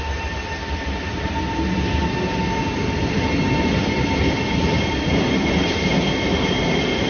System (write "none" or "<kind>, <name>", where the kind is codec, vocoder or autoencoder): none